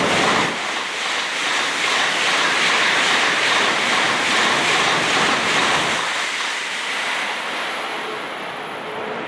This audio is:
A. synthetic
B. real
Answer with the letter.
B